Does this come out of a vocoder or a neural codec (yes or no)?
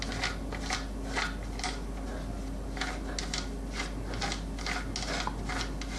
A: no